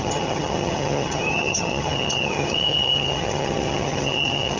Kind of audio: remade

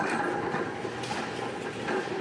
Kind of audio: recorded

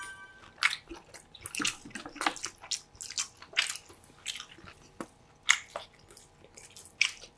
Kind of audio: recorded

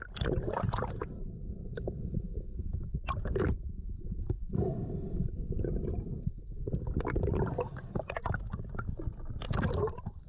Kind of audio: recorded